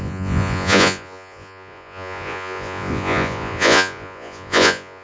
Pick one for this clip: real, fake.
fake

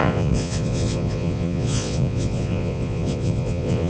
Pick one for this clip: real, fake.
fake